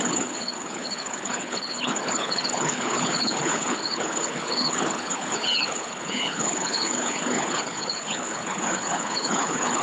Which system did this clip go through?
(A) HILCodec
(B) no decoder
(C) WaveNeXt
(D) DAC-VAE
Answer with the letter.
A